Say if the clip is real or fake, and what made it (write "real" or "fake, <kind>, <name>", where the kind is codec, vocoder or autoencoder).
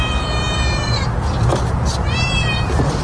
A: real